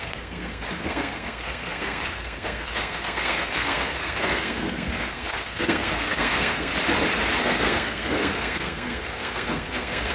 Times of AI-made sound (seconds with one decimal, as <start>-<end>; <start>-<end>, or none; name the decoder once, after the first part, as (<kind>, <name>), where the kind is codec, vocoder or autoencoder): 0.0-6.7 (codec, SNAC); 7.4-10.1